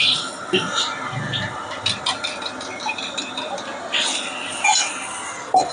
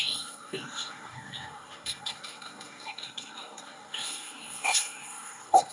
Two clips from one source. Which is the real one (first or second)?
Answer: first